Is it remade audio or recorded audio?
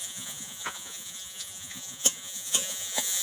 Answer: remade